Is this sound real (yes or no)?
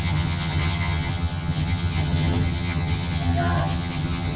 no